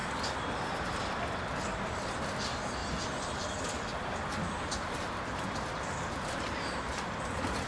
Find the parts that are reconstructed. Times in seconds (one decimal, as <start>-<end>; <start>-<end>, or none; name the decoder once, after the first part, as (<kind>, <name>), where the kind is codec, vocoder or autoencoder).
none